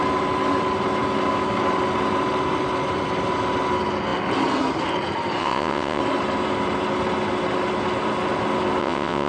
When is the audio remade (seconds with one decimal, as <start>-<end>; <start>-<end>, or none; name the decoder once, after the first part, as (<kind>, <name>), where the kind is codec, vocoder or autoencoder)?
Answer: 5.4-6.0 (vocoder, WaveNeXt); 8.8-9.3